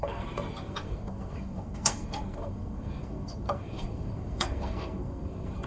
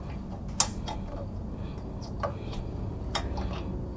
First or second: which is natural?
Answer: second